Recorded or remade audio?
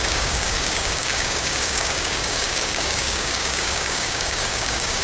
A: remade